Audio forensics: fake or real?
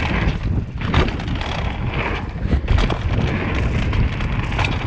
real